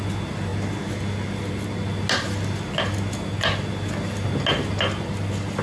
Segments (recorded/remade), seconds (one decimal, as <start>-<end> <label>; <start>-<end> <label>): 0.0-5.6 recorded